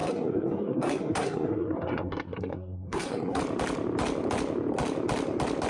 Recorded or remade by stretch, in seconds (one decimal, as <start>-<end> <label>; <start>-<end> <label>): 0.0-3.4 remade; 3.4-5.7 recorded